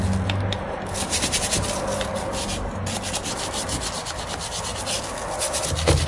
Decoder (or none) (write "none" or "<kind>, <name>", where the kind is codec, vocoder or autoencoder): none